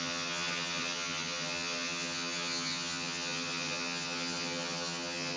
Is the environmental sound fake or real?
fake